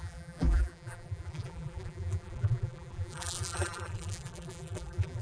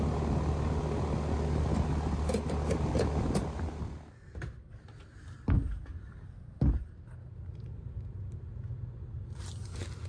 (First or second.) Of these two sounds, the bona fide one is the second